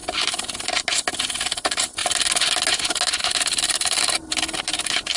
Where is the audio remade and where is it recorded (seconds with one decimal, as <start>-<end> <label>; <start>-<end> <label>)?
0.0-5.2 recorded